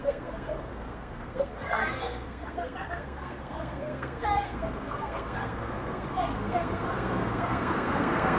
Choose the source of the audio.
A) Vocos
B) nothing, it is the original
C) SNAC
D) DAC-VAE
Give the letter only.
C